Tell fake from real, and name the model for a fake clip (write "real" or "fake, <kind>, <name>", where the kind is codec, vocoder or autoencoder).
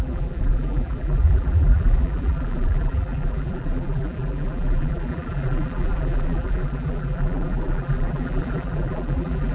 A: fake, vocoder, BigVGAN v2